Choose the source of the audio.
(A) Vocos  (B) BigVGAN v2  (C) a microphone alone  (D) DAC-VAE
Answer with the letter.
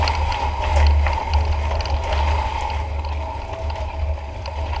C